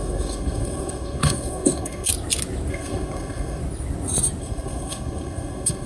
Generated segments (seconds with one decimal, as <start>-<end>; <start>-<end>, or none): 0.0-2.1; 2.7-3.6; 4.4-5.9